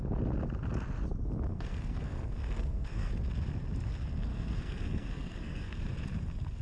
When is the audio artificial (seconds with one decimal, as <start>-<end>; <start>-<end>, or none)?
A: 1.5-3.1; 4.3-5.8